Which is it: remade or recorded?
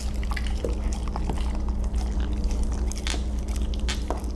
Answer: recorded